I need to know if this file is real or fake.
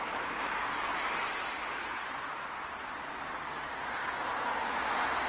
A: real